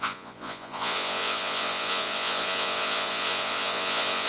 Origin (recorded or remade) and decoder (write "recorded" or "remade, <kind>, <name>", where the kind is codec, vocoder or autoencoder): remade, vocoder, Vocos